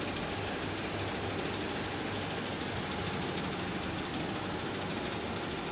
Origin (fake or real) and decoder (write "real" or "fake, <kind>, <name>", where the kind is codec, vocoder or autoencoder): real